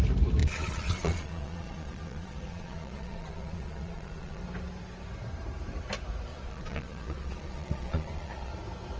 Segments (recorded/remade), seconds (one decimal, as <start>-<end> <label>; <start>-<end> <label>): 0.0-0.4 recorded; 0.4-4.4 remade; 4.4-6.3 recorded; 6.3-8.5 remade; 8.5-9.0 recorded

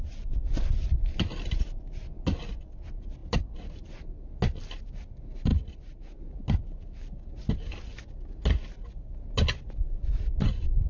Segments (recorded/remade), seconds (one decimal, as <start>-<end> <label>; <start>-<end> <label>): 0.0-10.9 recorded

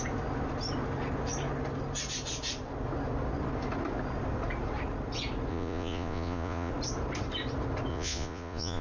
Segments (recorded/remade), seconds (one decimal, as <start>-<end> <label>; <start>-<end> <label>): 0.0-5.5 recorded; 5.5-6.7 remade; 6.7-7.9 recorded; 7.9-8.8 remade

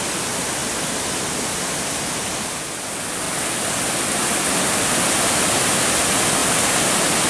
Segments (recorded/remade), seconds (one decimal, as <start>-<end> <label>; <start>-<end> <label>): 0.0-7.3 recorded